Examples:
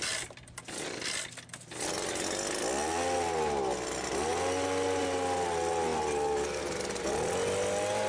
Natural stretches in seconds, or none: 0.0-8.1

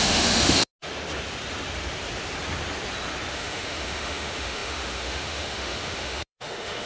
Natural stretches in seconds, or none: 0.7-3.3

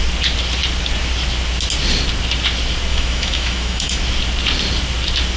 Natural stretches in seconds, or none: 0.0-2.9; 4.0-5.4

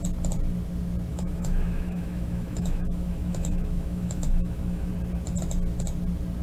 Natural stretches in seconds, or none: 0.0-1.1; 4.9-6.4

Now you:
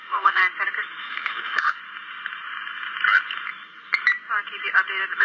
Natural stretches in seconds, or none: 0.4-1.0; 1.8-5.2

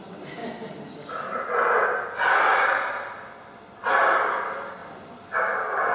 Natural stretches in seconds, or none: 0.0-5.9

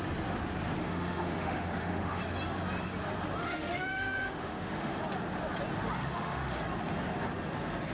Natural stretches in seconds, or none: 0.0-0.8; 2.2-3.4; 4.9-6.0; 6.6-7.9